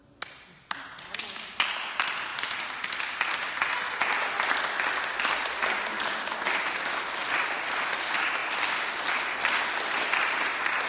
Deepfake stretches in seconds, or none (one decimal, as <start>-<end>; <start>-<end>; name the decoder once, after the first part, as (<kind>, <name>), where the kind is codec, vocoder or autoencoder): none